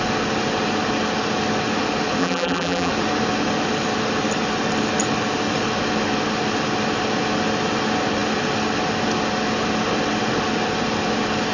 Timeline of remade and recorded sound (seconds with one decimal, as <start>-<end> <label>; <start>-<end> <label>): 0.0-2.2 recorded; 2.2-2.9 remade; 2.9-11.5 recorded